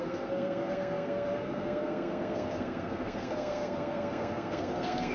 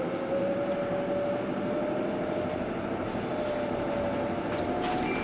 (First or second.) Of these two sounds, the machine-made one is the first